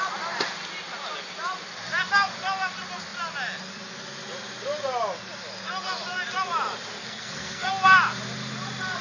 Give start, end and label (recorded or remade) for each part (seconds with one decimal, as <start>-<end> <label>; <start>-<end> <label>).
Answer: 0.0-7.0 recorded; 7.0-7.7 remade; 7.7-9.0 recorded